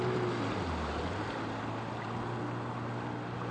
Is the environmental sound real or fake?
real